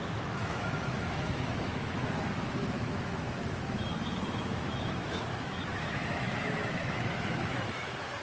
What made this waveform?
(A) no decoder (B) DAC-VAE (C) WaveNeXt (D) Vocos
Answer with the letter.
B